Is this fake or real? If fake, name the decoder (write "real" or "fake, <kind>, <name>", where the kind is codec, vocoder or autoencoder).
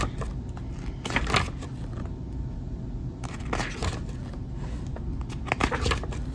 real